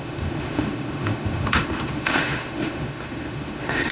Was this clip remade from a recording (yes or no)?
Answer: yes